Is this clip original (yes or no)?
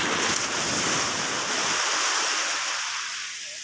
yes